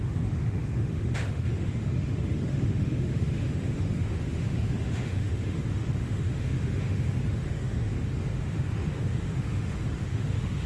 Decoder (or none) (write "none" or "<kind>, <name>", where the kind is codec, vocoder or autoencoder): autoencoder, DAC-VAE